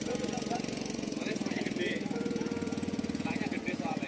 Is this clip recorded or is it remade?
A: remade